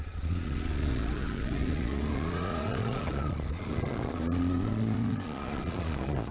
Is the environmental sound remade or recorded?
remade